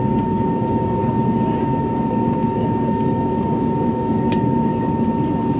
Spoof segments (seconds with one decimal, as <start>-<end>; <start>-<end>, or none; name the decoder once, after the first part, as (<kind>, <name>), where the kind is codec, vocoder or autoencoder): 0.0-1.0 (codec, DAC); 1.8-4.7